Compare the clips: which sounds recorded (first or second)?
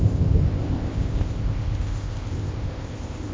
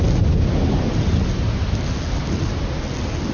second